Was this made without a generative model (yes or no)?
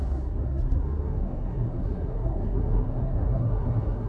no